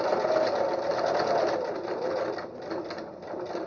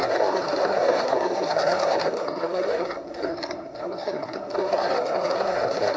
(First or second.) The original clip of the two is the first